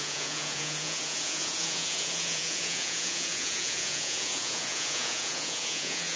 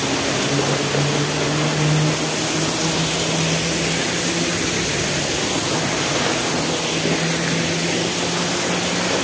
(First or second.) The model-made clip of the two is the first